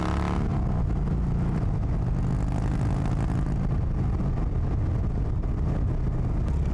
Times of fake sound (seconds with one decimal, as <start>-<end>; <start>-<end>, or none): none